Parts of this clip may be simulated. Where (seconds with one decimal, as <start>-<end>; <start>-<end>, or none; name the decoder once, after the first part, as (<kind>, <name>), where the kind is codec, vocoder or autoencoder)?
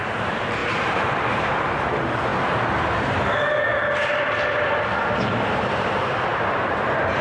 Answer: 0.0-2.3 (vocoder, BigVGAN v2); 5.2-7.2